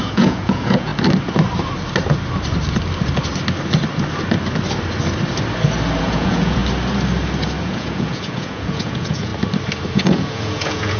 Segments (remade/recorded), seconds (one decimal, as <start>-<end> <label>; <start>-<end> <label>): 0.0-0.9 remade; 0.9-6.0 recorded; 6.0-6.6 remade; 6.6-7.6 recorded; 7.6-9.3 remade; 9.3-9.9 recorded; 9.9-11.0 remade